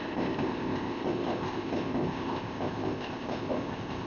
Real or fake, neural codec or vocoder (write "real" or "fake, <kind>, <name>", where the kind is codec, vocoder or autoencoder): fake, codec, ZipCodec